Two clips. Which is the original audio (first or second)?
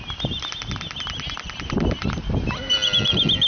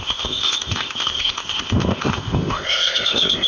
first